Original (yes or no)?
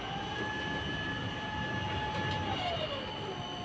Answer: yes